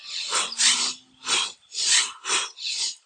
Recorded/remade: recorded